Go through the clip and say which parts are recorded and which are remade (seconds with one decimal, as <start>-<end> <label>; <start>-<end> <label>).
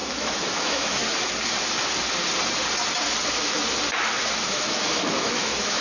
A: 0.0-1.0 remade; 1.0-4.5 recorded; 4.5-5.8 remade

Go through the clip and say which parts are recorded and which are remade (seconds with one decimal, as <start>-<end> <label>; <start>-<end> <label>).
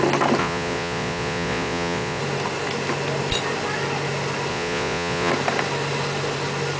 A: 0.0-0.4 recorded; 0.4-2.2 remade; 2.2-4.5 recorded; 4.5-5.3 remade; 5.3-6.8 recorded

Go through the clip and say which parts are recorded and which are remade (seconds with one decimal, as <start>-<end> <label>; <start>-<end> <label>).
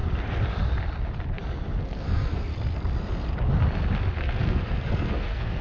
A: 0.0-1.8 recorded; 1.8-2.5 remade; 2.5-4.3 recorded; 4.3-5.6 remade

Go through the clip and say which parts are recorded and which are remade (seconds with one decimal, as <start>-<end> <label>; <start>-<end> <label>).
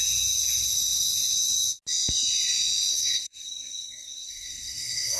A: 0.0-2.9 recorded; 2.9-5.2 remade